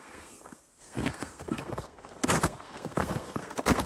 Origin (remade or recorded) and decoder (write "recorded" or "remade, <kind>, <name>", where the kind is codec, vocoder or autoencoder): remade, codec, SNAC